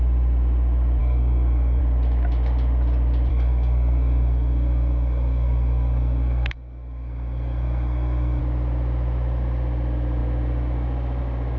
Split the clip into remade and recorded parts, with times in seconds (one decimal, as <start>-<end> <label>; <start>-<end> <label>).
0.0-1.0 recorded; 1.0-1.8 remade; 1.8-3.3 recorded; 3.3-8.4 remade; 8.4-11.6 recorded